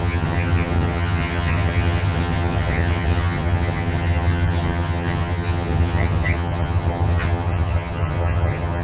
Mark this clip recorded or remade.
remade